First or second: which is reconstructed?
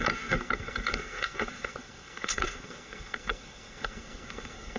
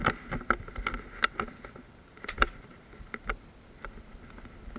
first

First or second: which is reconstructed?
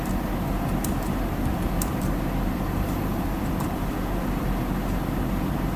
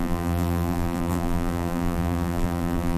second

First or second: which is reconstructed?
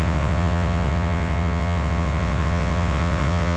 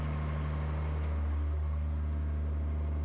first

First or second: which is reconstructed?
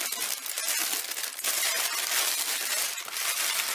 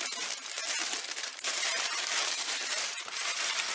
second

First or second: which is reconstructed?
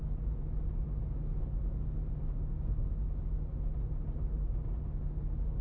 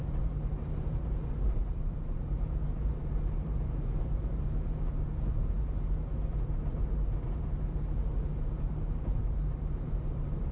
second